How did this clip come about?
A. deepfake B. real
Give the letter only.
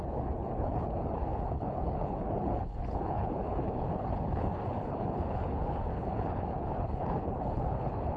A